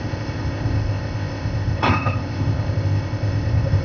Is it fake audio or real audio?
fake